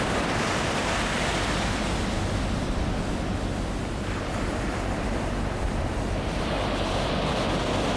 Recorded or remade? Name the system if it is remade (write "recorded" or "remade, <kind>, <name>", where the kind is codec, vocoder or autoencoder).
remade, vocoder, BigVGAN v2